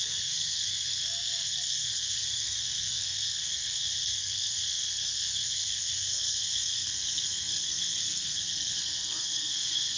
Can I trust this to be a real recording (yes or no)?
no